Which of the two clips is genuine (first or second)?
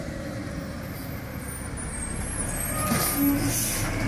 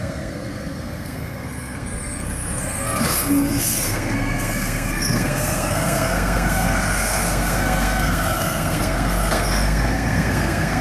first